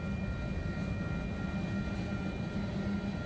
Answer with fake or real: real